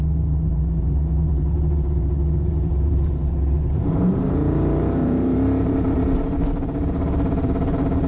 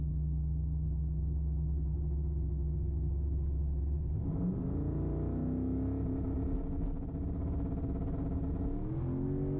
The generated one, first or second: first